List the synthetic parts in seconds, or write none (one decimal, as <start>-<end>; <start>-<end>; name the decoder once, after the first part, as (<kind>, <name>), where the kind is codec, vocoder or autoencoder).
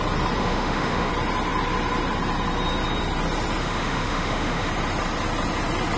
0.4-1.1 (autoencoder, DAC-VAE); 3.6-4.7